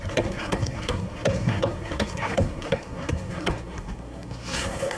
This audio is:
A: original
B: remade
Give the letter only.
B